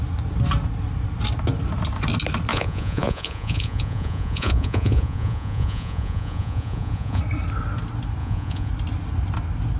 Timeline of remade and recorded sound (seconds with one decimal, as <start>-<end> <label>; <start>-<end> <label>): 0.0-2.5 recorded; 2.5-7.2 remade; 7.2-8.2 recorded; 8.2-8.7 remade; 8.7-9.8 recorded